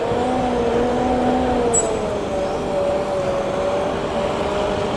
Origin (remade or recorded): recorded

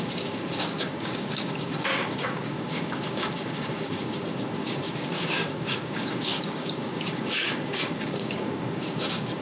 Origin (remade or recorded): remade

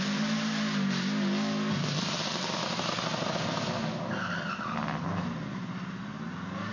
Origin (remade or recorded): recorded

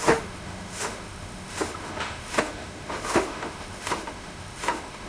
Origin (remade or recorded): remade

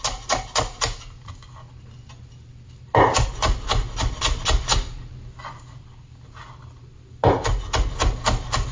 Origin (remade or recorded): recorded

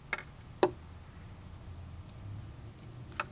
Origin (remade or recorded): recorded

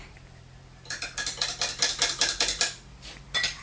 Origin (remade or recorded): recorded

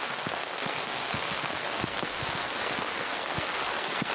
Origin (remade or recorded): remade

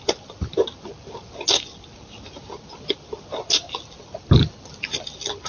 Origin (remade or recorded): recorded